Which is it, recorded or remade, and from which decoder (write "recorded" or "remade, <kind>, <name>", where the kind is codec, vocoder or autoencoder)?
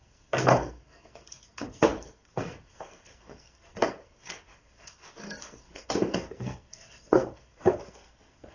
remade, codec, SNAC